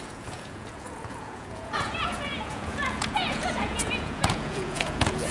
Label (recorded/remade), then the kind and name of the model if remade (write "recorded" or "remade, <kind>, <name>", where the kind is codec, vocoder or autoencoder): remade, vocoder, Vocos